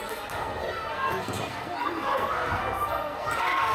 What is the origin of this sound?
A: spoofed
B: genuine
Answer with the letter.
A